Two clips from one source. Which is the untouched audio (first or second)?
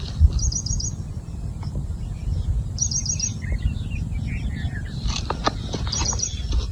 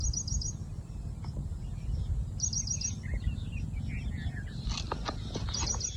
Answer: second